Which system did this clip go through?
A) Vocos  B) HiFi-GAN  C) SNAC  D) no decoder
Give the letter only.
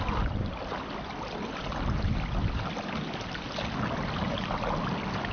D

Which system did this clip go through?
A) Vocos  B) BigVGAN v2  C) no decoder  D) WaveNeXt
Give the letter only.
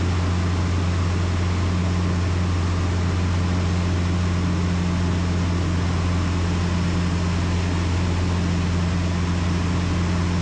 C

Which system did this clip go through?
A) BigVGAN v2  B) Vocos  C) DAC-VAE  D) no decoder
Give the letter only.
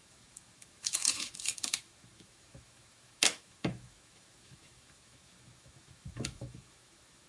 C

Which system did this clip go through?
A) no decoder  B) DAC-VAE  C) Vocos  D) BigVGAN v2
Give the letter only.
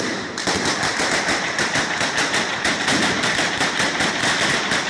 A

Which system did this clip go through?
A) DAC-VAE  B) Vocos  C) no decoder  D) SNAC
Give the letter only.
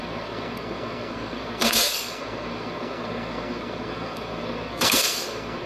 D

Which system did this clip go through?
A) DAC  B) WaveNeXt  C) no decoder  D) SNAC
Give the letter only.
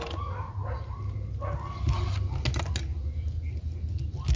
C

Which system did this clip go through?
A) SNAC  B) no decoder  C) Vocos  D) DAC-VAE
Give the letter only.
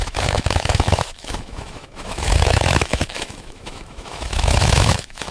D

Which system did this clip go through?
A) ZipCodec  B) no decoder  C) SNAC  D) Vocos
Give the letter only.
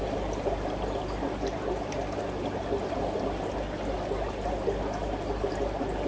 B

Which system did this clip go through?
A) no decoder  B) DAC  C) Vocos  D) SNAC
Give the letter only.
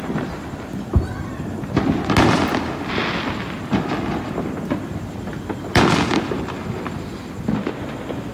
A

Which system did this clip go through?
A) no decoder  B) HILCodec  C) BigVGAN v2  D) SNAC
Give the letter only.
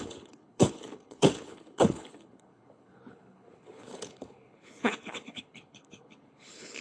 B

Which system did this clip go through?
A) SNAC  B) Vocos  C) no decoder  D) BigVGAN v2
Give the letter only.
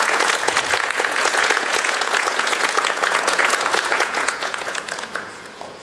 B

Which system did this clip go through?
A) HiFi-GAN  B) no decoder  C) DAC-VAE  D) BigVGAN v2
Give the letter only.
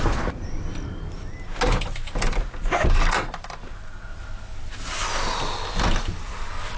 B